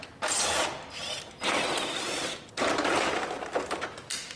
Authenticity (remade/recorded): recorded